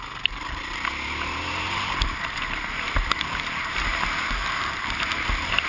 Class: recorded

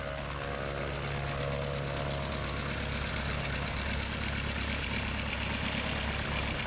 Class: recorded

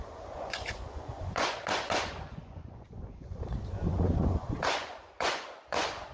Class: remade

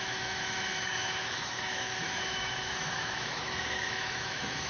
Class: remade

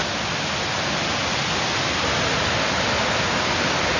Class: recorded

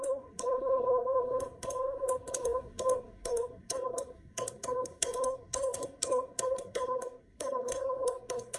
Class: remade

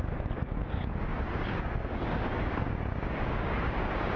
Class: remade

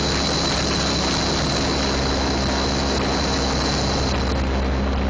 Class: recorded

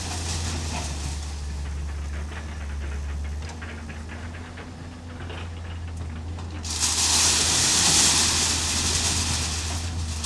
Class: recorded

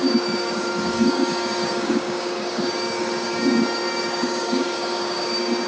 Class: remade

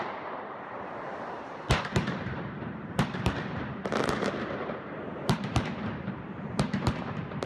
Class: remade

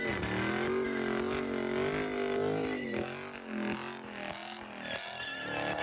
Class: recorded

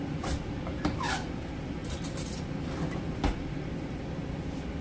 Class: recorded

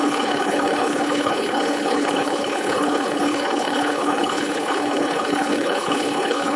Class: remade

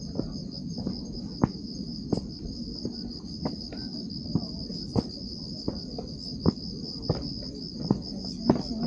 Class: recorded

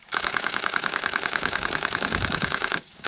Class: remade